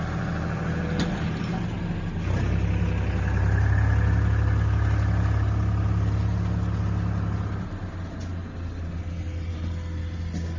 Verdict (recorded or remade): recorded